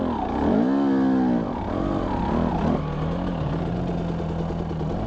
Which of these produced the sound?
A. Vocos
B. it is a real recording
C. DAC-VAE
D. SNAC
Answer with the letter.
B